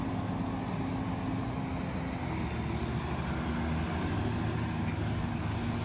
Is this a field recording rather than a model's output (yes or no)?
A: yes